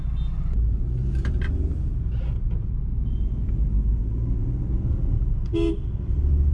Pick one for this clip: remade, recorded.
recorded